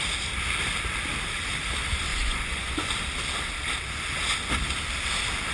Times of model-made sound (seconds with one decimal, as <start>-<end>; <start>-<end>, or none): 2.1-2.9